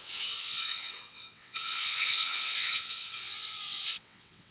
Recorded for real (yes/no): no